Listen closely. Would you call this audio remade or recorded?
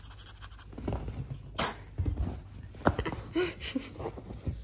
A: recorded